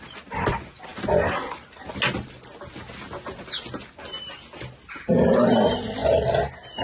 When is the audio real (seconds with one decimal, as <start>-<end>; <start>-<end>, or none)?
0.0-6.8